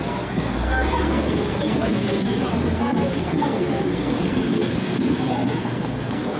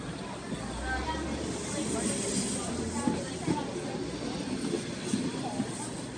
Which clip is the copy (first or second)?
first